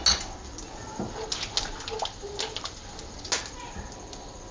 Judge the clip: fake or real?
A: real